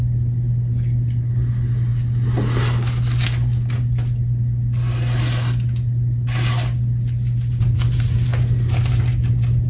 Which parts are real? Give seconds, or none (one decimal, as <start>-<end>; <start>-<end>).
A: 0.0-9.7